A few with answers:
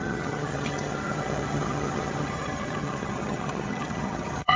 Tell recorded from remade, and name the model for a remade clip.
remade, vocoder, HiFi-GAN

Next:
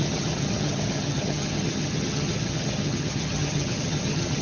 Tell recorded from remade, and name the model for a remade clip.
remade, vocoder, HiFi-GAN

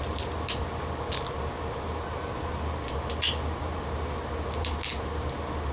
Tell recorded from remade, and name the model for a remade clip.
recorded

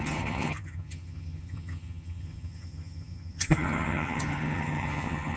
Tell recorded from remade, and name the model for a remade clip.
remade, vocoder, HiFi-GAN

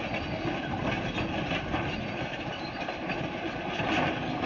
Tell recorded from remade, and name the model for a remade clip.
recorded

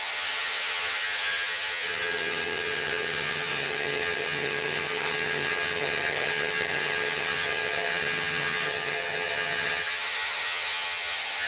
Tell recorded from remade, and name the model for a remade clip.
remade, vocoder, HiFi-GAN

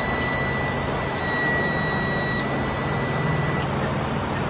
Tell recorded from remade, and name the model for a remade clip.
recorded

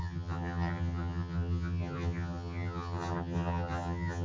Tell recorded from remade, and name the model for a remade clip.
remade, vocoder, HiFi-GAN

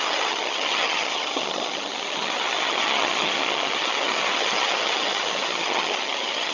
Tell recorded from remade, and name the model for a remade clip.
remade, vocoder, HiFi-GAN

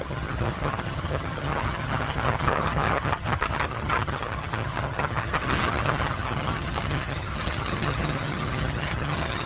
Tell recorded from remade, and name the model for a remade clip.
remade, vocoder, HiFi-GAN